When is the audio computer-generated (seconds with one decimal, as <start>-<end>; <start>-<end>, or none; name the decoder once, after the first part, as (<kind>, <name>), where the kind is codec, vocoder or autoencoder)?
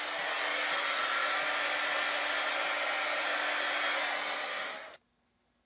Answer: none